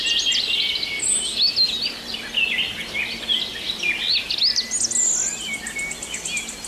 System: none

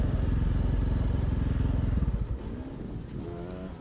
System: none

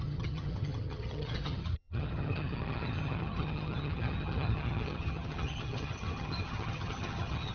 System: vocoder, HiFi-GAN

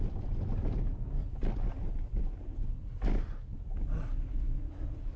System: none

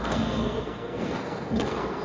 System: codec, SNAC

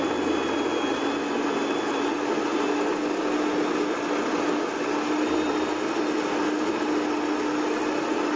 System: none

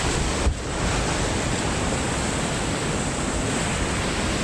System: none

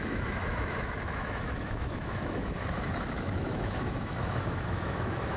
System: autoencoder, DAC-VAE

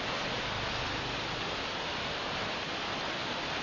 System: none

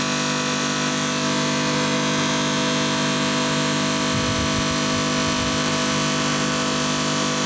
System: none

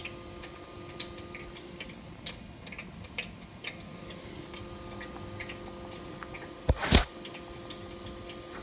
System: none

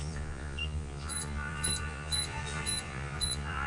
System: vocoder, Vocos